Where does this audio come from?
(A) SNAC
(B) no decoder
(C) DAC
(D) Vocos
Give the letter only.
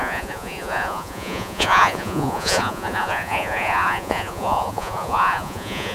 D